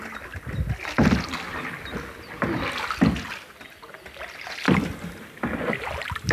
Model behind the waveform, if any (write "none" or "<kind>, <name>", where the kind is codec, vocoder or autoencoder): none